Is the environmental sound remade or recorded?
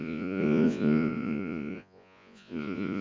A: remade